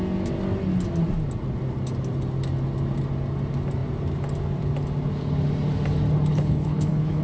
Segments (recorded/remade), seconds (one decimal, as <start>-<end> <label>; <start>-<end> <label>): 0.0-6.3 recorded; 6.3-7.2 remade